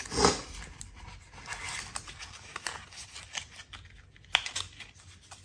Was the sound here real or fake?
real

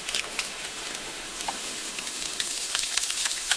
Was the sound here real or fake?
fake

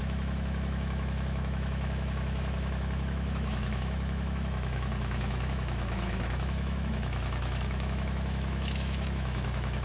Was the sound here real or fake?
fake